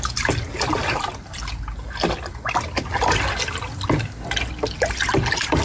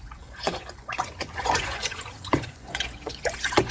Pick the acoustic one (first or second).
first